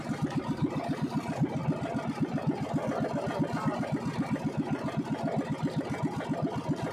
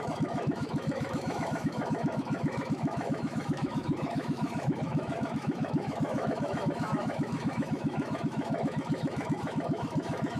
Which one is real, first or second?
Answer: first